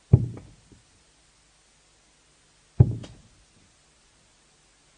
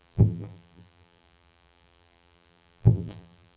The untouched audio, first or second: first